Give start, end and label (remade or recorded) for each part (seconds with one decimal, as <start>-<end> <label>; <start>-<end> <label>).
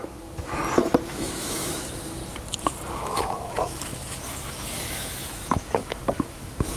0.0-0.6 remade; 0.6-1.1 recorded; 1.1-2.2 remade; 2.2-2.9 recorded; 2.9-6.8 remade